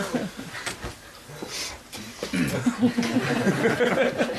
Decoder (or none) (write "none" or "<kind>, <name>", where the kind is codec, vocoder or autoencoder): none